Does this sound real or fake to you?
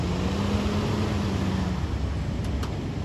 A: real